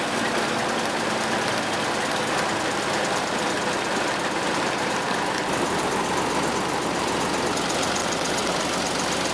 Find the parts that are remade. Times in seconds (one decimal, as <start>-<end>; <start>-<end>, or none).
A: 8.0-8.5